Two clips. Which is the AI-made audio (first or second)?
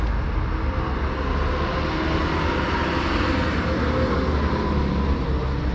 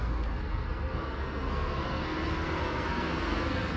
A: second